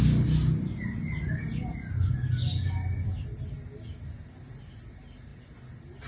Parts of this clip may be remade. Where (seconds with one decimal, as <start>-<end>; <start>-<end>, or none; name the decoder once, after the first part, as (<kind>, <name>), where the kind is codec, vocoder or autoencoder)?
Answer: none